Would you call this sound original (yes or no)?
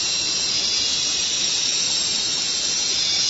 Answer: no